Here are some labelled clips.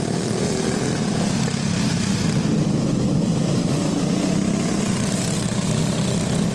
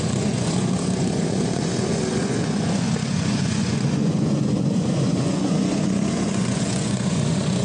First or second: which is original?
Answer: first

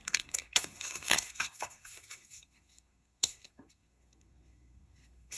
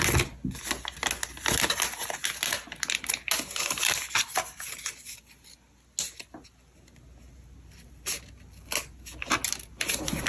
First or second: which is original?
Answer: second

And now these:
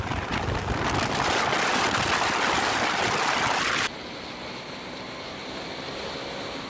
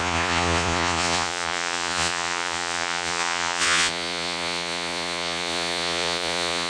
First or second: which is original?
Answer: first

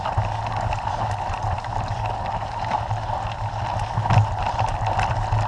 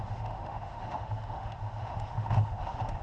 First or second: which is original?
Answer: first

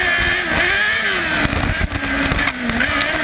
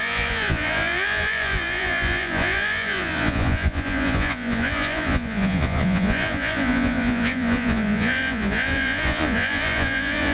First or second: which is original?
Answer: first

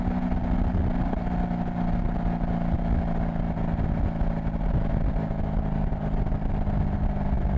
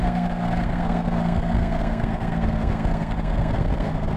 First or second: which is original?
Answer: first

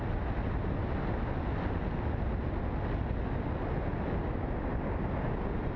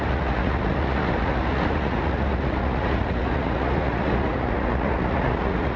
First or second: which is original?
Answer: first